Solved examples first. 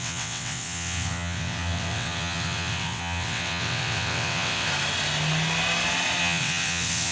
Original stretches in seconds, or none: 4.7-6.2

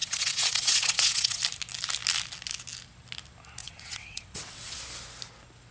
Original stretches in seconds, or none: 1.4-3.6; 4.8-5.7

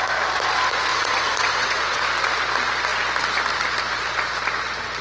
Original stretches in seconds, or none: 0.0-0.9; 2.0-5.0